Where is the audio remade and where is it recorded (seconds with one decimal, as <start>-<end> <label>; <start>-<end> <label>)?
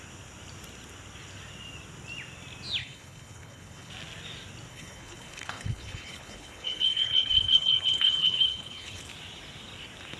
0.0-2.8 recorded; 2.8-3.9 remade; 3.9-4.7 recorded; 4.7-9.0 remade; 9.0-10.2 recorded